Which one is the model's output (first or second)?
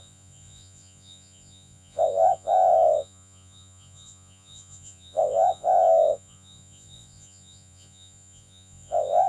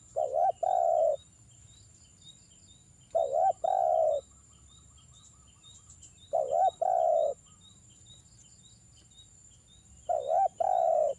first